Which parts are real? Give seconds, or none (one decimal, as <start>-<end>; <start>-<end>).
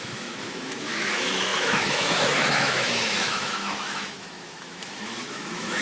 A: none